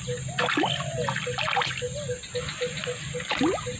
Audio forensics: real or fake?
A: real